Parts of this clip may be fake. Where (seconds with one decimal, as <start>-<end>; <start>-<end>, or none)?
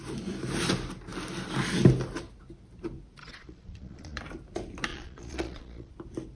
3.2-4.2; 4.9-5.9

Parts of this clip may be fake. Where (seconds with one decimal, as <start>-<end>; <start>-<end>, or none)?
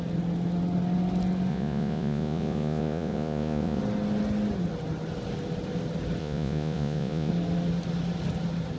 1.5-3.8; 6.2-7.3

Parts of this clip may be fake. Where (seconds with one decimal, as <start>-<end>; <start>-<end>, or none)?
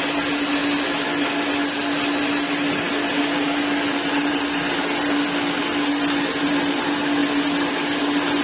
none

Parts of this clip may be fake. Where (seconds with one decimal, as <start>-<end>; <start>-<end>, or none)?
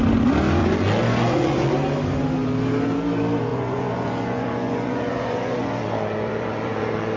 0.6-1.7; 3.5-7.2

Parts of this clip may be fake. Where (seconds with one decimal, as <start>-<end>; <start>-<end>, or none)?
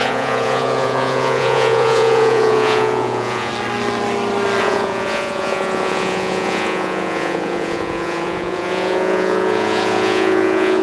0.0-3.5; 4.6-10.8